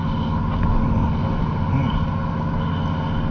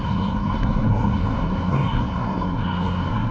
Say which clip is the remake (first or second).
second